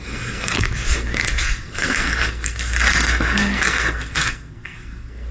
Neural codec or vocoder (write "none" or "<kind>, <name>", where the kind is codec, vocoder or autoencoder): codec, SNAC